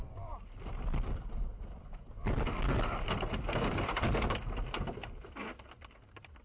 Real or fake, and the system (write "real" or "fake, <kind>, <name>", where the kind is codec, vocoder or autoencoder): fake, vocoder, BigVGAN v2